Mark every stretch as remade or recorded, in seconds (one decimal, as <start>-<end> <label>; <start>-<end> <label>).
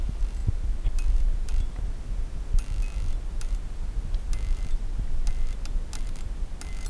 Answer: 0.0-6.9 recorded